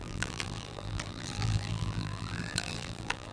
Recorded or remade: remade